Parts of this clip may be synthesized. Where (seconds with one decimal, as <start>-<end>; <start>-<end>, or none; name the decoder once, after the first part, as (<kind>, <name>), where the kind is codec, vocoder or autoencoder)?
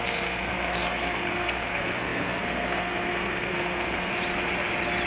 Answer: 0.0-4.1 (codec, SNAC)